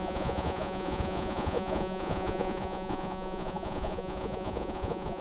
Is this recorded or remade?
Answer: remade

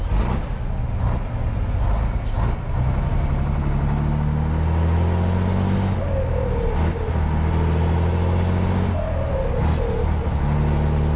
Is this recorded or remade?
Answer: recorded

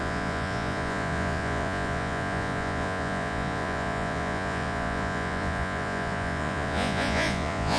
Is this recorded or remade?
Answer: remade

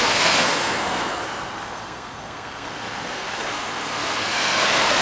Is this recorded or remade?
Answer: remade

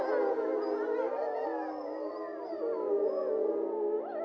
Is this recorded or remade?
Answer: recorded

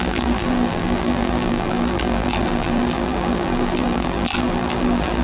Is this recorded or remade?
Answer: remade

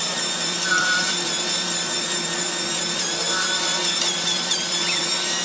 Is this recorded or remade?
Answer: remade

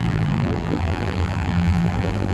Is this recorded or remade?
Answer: remade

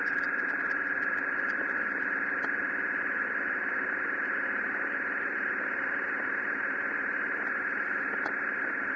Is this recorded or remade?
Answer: recorded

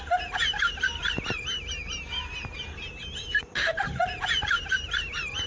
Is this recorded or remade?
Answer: remade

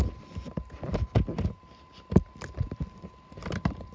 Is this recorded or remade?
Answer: recorded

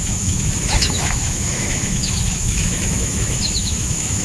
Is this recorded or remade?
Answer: remade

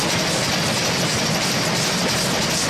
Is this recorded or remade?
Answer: recorded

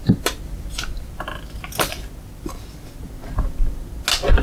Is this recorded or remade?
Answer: recorded